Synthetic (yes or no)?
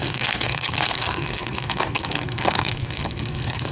yes